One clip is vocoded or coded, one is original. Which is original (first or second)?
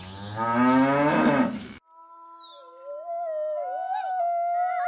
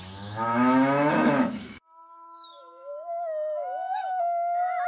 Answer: first